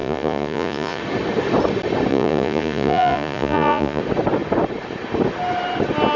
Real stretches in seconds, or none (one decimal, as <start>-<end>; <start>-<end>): 1.0-2.1; 4.0-6.2